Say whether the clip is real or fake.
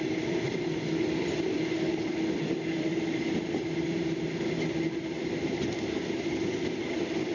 fake